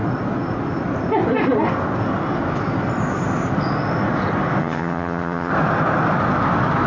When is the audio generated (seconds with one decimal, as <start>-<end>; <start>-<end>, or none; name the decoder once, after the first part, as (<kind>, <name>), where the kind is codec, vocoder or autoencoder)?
4.6-5.5 (vocoder, HiFi-GAN)